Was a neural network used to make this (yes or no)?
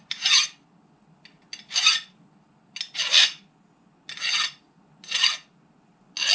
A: no